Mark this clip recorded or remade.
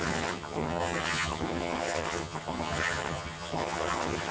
remade